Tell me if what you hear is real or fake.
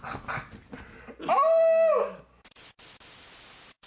real